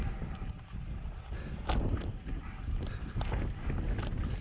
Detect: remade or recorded recorded